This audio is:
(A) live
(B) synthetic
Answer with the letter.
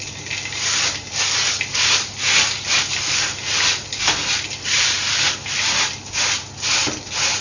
A